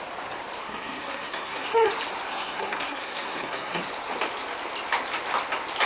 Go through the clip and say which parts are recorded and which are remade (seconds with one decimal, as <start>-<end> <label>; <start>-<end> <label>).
0.0-0.6 recorded; 0.6-1.9 remade; 1.9-2.3 recorded; 2.3-3.8 remade; 3.8-5.9 recorded

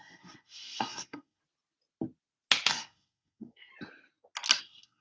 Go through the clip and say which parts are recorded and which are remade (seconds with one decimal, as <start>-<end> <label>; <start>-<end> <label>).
0.0-1.4 remade; 1.4-2.7 recorded; 2.7-3.7 remade; 3.7-4.6 recorded; 4.6-5.0 remade

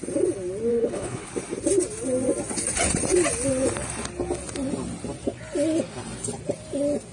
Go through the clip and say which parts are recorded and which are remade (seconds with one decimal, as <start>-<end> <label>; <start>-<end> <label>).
0.0-0.7 recorded; 0.7-1.3 remade; 1.3-7.1 recorded

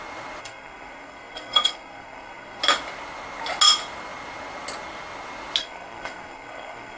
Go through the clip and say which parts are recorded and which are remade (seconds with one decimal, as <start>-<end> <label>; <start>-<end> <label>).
0.0-0.4 recorded; 0.4-2.6 remade; 2.6-5.6 recorded; 5.6-7.0 remade

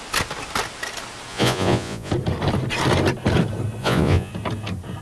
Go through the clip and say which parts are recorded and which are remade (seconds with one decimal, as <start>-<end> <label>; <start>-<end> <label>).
0.0-1.3 recorded; 1.3-2.1 remade; 2.1-3.8 recorded; 3.8-4.3 remade; 4.3-5.0 recorded

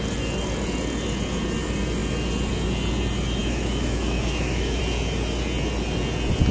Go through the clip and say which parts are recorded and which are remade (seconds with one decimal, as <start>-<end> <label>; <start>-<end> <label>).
0.0-3.4 recorded; 3.4-4.8 remade; 4.8-6.5 recorded

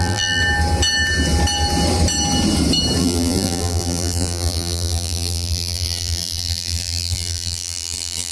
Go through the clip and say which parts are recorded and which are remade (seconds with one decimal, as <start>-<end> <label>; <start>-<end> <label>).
0.0-0.4 remade; 0.4-3.0 recorded; 3.0-8.3 remade